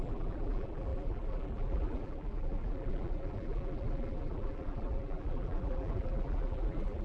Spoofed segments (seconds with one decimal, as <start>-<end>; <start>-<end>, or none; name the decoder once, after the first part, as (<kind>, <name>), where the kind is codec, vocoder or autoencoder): 0.0-7.0 (vocoder, BigVGAN v2)